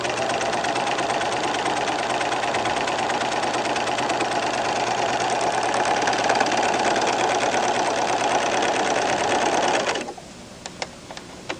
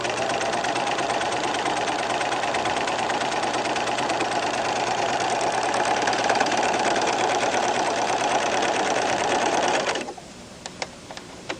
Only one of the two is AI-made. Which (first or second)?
second